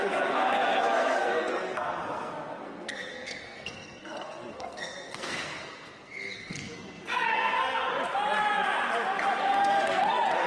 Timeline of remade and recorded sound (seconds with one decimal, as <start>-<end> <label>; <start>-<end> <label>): 0.0-7.9 remade; 7.9-9.4 recorded; 9.4-10.5 remade